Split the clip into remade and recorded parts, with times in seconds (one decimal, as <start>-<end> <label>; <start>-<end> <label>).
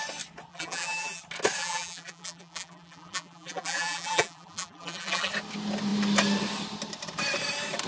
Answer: 0.0-0.5 recorded; 0.5-1.2 remade; 1.2-1.6 recorded; 1.6-5.3 remade; 5.3-7.9 recorded